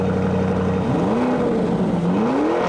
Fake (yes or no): no